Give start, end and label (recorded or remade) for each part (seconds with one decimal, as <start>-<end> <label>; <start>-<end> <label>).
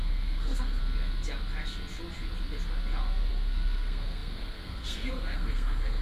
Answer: 0.0-0.8 remade; 0.8-3.3 recorded; 3.3-6.0 remade